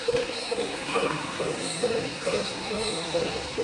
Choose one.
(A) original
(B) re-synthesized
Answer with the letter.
B